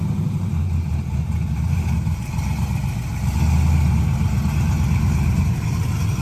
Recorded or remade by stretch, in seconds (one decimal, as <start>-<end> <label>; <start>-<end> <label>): 0.0-3.1 remade; 3.1-4.5 recorded; 4.5-6.2 remade